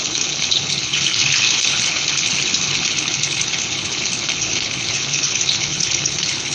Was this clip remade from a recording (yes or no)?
yes